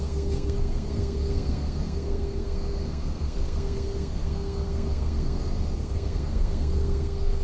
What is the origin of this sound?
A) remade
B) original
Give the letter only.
A